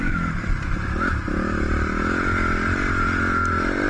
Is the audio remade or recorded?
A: recorded